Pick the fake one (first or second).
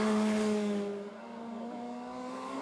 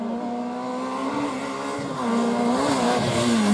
first